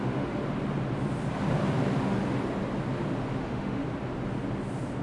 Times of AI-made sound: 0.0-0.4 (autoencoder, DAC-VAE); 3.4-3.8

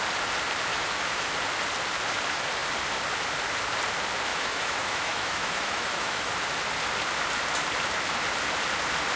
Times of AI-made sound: 0.7-1.3 (autoencoder, DAC-VAE); 4.3-6.3

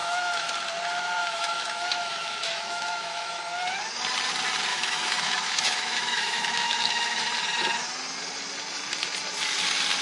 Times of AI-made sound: 0.0-0.5 (autoencoder, DAC-VAE); 1.2-3.4; 4.7-7.3

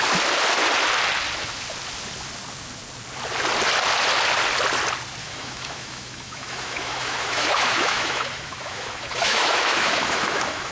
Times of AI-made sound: 5.2-10.7 (autoencoder, DAC-VAE)

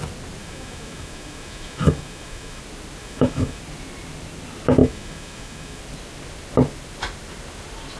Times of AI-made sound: 0.4-2.6 (autoencoder, DAC-VAE); 3.0-3.6; 4.8-5.8